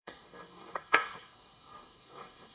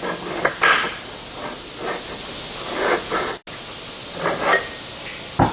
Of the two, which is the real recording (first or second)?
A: second